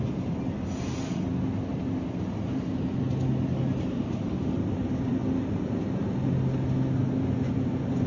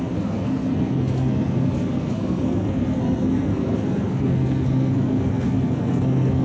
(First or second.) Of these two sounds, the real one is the first